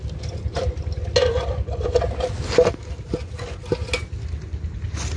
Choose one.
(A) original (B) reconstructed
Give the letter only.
A